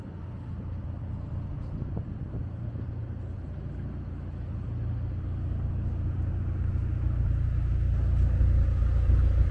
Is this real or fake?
real